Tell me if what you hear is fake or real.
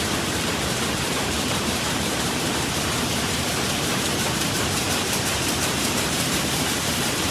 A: fake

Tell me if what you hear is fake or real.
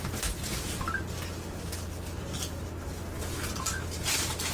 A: real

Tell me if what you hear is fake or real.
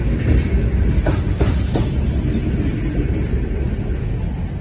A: real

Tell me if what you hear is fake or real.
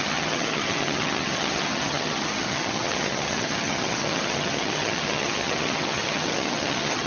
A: fake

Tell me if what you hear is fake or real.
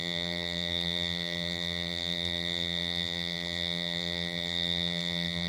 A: fake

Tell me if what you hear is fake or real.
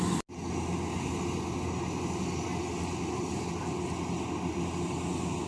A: real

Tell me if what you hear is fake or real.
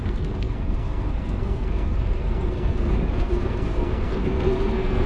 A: fake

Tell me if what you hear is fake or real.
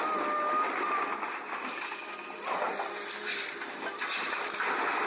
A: real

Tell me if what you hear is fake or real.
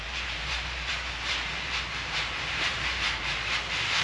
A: fake